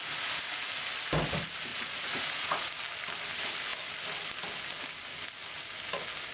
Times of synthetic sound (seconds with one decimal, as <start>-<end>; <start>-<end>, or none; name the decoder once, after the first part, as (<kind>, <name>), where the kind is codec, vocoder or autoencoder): 0.0-0.7 (vocoder, Vocos); 1.7-2.7